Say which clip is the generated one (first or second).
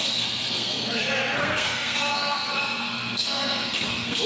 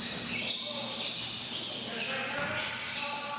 first